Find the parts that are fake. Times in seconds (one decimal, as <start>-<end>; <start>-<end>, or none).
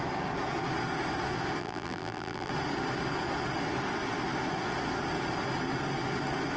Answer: 1.6-2.5